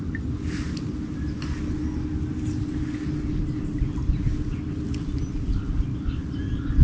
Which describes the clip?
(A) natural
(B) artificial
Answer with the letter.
A